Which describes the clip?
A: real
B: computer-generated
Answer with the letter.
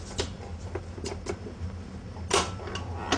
A